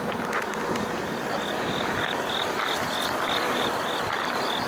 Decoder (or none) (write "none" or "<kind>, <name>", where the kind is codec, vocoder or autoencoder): none